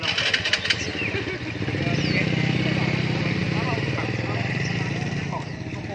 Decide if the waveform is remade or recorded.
recorded